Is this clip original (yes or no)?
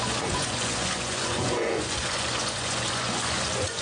no